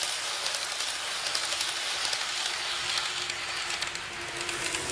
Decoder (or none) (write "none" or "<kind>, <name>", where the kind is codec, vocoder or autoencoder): none